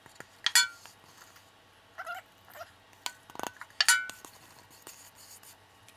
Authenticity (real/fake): real